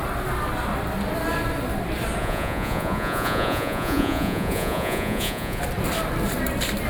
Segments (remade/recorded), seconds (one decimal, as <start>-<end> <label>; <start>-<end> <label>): 0.0-2.2 recorded; 2.2-5.6 remade; 5.6-6.9 recorded